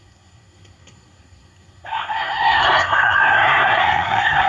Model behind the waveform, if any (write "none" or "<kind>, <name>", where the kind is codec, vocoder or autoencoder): codec, SNAC